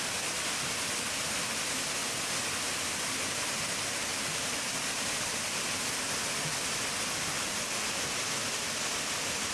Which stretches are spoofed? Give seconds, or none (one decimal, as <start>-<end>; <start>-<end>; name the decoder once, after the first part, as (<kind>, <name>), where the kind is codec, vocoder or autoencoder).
none